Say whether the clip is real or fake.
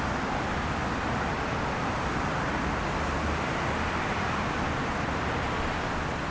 real